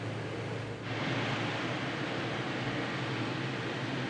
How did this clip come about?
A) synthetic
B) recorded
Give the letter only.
B